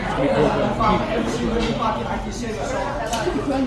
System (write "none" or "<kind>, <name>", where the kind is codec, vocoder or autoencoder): none